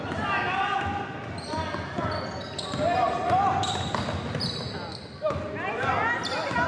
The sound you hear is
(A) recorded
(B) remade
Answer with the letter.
A